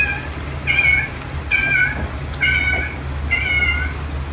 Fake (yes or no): no